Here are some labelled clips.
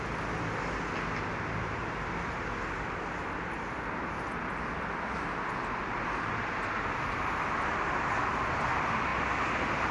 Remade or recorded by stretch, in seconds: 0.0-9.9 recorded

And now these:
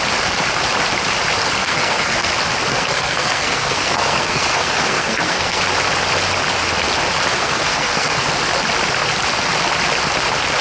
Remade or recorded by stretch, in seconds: 0.0-1.6 recorded; 1.6-2.3 remade; 2.3-2.7 recorded; 2.7-5.6 remade; 5.6-7.3 recorded; 7.3-8.2 remade; 8.2-10.6 recorded

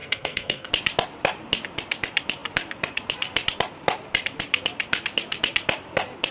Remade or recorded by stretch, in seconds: 0.0-0.7 remade; 0.7-6.3 recorded

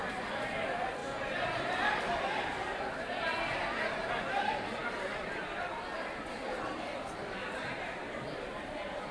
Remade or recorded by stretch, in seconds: 0.0-1.0 remade; 1.0-1.7 recorded; 1.7-3.3 remade; 3.3-4.1 recorded; 4.1-9.1 remade

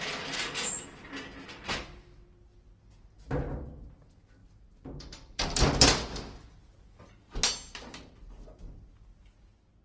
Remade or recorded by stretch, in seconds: 0.0-9.8 recorded

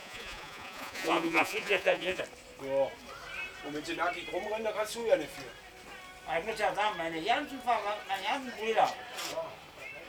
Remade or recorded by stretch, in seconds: 0.0-2.2 remade; 2.2-10.1 recorded

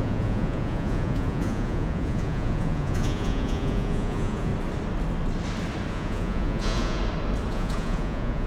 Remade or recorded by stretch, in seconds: 0.0-4.5 remade; 4.5-5.9 recorded; 5.9-7.0 remade; 7.0-7.5 recorded; 7.5-8.5 remade